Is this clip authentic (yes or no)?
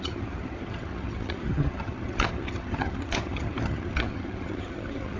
no